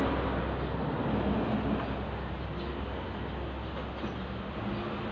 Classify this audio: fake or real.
real